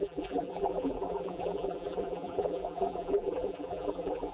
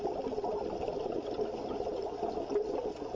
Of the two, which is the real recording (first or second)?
second